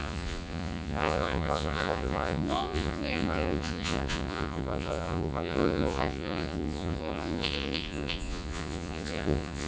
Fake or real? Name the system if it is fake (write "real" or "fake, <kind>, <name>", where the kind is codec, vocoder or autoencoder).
fake, vocoder, Vocos